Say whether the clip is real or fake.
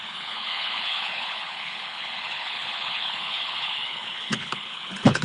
fake